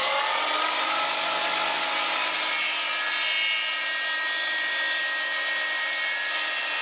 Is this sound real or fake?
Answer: real